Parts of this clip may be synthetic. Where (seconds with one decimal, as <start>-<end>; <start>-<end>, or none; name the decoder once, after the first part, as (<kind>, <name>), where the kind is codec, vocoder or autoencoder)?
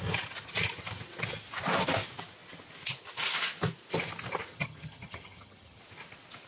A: 4.5-5.8 (vocoder, HiFi-GAN)